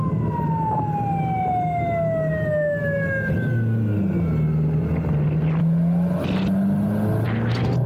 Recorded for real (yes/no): yes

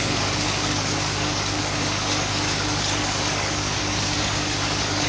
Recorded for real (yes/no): no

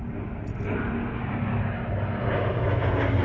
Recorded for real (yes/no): yes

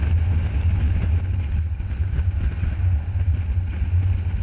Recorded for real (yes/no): yes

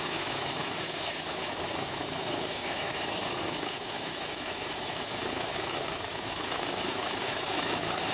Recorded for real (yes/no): no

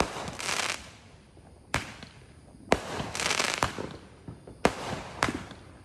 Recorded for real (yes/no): no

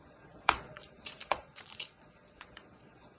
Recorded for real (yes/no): no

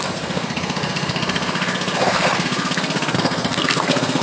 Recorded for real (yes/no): no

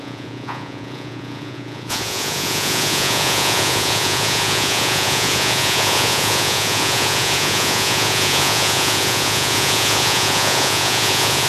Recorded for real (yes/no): no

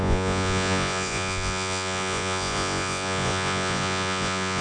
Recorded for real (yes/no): no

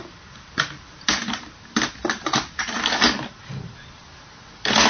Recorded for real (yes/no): yes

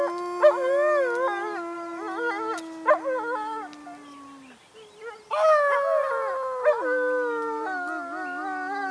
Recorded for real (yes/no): yes